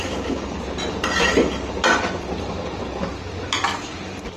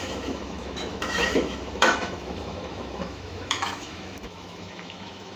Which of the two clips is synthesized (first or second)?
second